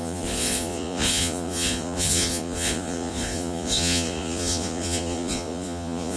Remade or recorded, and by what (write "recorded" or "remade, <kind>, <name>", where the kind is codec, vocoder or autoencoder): remade, vocoder, Vocos